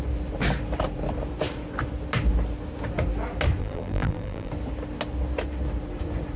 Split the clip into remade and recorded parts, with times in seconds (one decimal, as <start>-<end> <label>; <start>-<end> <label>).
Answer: 0.0-3.6 recorded; 3.6-4.5 remade; 4.5-6.4 recorded